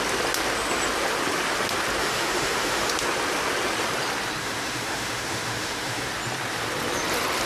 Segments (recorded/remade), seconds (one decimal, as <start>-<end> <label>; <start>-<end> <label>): 0.0-2.0 recorded; 2.0-2.9 remade; 2.9-4.4 recorded; 4.4-6.1 remade; 6.1-7.5 recorded